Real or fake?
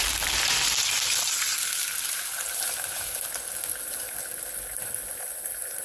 real